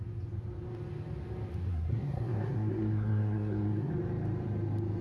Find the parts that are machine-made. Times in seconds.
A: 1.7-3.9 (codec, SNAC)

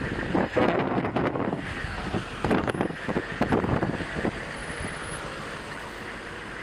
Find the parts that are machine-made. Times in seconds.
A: 0.4-3.1 (codec, SNAC)

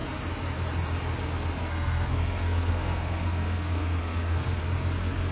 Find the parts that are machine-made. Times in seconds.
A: 1.6-4.6 (codec, SNAC)

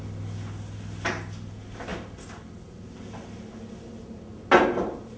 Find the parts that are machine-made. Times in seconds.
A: none

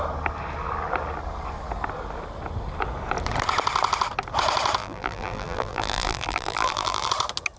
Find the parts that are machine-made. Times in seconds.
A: 4.8-7.1 (vocoder, BigVGAN v2)

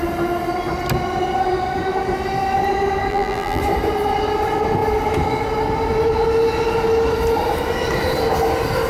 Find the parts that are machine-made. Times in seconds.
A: 3.1-3.6 (vocoder, BigVGAN v2)

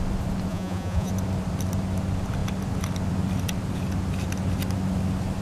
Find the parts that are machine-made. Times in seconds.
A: 0.5-1.1 (vocoder, Vocos)

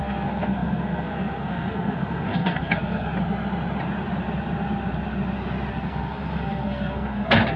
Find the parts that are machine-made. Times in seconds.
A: 0.0-3.1 (codec, SNAC); 5.7-7.6